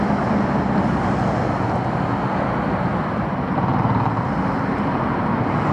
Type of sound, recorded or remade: recorded